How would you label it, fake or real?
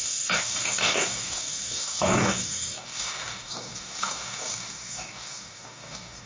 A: fake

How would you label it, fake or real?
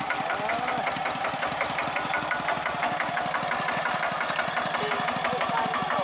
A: real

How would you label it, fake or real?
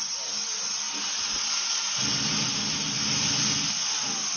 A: real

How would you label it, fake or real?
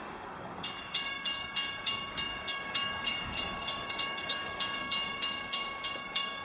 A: fake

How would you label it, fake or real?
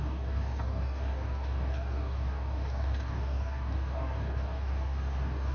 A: fake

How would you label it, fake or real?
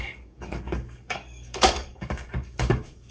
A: fake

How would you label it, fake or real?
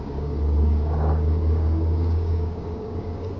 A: fake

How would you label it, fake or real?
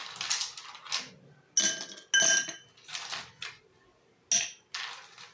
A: real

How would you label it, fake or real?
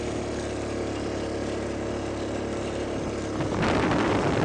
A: real